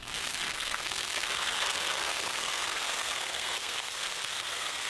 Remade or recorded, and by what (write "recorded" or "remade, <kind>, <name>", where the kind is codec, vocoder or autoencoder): remade, codec, SNAC